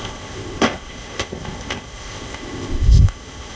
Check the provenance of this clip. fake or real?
fake